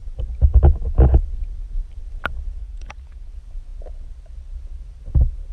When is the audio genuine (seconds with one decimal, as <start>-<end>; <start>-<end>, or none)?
0.0-2.6; 3.3-5.5